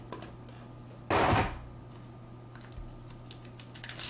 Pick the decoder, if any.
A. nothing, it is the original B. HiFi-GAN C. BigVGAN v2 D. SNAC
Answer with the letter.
A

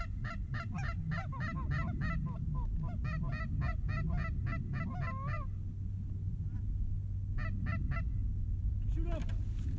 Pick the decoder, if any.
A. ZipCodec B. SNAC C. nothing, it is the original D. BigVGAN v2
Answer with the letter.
C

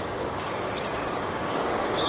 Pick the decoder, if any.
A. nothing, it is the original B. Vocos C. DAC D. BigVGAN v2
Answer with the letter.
C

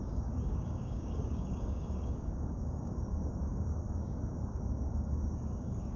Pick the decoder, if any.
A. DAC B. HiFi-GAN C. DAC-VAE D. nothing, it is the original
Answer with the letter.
A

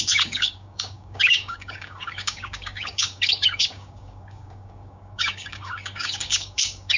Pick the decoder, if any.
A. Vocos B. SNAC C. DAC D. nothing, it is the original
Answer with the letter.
C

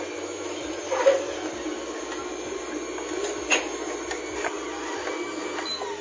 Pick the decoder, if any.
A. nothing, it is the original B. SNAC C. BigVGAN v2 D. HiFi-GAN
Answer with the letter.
A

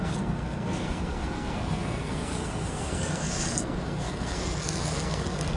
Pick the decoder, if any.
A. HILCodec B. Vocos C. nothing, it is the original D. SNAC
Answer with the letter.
D